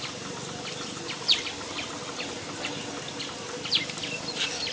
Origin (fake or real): real